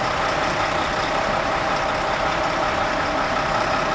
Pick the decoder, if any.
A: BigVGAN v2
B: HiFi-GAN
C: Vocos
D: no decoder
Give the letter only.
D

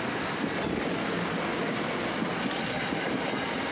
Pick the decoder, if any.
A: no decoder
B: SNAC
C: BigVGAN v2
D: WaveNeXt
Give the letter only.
A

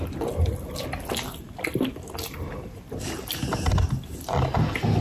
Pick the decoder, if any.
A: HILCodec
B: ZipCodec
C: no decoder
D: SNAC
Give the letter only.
C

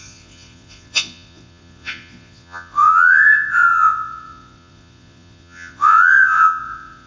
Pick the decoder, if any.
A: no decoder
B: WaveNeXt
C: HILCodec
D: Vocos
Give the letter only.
D